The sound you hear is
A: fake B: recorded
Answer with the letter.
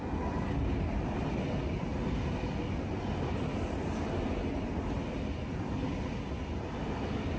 B